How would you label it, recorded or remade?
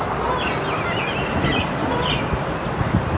recorded